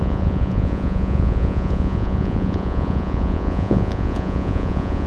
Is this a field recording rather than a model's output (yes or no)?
no